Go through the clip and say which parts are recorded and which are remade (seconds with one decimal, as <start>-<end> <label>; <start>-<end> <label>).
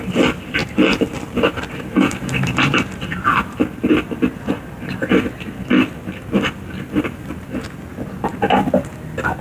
0.0-0.6 recorded; 0.6-3.6 remade; 3.6-9.4 recorded